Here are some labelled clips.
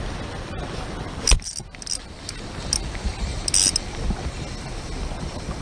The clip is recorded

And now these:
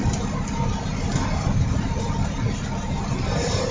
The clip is recorded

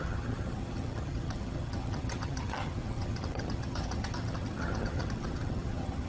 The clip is remade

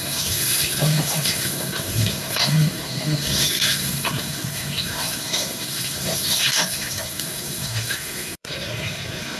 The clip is remade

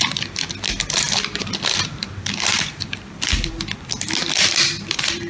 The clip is remade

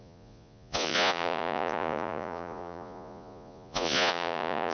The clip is remade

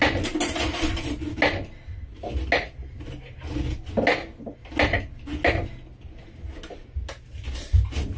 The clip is recorded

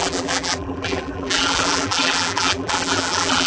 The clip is remade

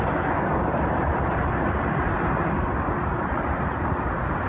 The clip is recorded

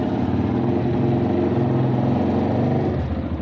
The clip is recorded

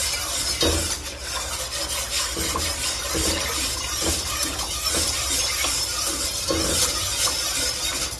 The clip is recorded